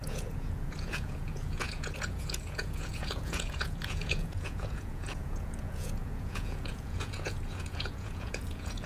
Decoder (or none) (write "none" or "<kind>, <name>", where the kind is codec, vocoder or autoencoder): vocoder, Vocos